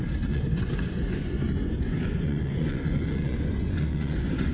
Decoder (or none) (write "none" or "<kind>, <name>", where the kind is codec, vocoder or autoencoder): vocoder, Vocos